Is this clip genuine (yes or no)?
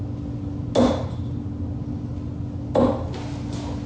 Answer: yes